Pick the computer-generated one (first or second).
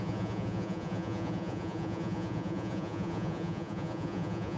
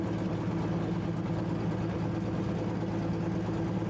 first